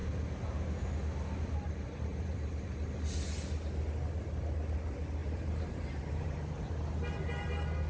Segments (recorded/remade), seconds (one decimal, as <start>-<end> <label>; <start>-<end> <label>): 0.0-2.1 recorded; 2.1-3.0 remade; 3.0-5.2 recorded; 5.2-6.6 remade; 6.6-7.9 recorded